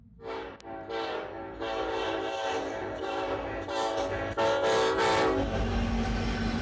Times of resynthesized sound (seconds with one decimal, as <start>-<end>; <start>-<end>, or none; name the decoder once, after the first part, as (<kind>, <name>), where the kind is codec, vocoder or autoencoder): 2.8-4.0 (vocoder, BigVGAN v2)